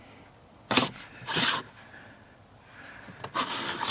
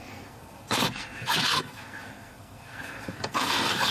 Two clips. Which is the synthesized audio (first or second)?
second